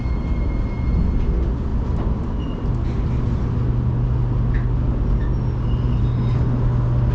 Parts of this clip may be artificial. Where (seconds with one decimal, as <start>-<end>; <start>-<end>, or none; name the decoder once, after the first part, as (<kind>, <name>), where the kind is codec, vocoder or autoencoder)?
none